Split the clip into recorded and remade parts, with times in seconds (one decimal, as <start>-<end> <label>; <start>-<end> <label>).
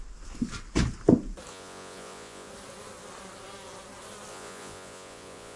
0.0-1.5 recorded; 1.5-2.5 remade; 2.5-4.3 recorded; 4.3-5.6 remade